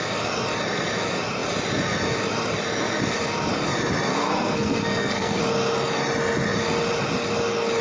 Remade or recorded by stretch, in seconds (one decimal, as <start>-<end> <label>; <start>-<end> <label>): 0.0-4.1 recorded; 4.1-5.4 remade; 5.4-7.8 recorded